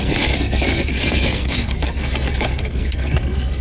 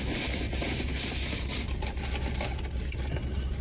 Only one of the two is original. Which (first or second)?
second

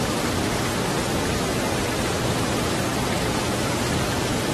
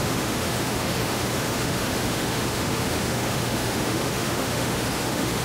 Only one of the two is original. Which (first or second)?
first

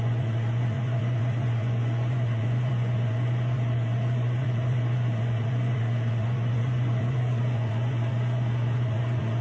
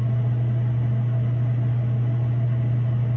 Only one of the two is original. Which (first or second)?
second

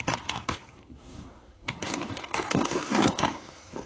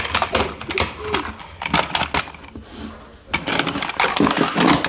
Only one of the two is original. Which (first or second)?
second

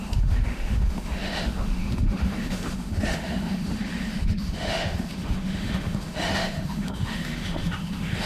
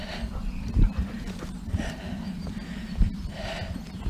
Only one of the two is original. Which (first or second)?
second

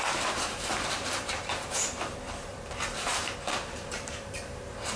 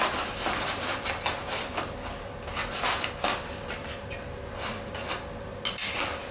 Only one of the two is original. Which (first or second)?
second